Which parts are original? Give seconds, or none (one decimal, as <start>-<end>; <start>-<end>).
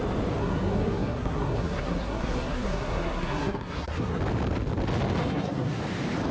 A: 0.0-0.4; 4.2-5.2; 5.8-6.3